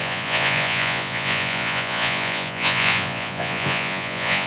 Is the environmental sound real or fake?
fake